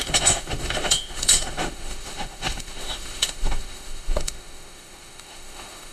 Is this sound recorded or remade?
remade